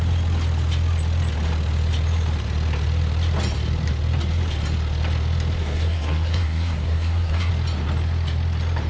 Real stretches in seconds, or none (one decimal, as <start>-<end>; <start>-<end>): 0.0-5.6; 7.5-8.9